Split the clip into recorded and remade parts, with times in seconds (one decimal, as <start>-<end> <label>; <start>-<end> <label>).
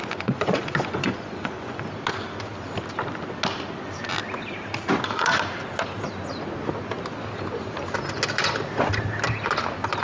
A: 0.0-1.8 remade; 1.8-10.0 recorded